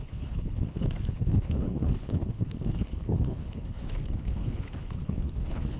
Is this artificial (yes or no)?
yes